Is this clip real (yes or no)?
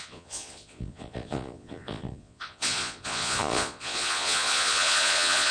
no